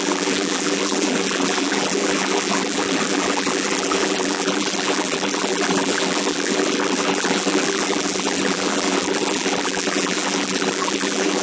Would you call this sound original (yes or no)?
no